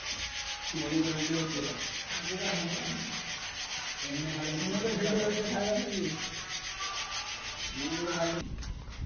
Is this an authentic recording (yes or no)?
yes